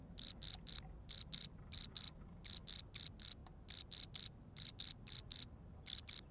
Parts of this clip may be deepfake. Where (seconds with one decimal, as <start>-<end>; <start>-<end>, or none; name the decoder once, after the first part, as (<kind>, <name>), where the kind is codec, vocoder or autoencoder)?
none